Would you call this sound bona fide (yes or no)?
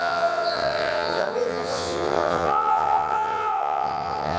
no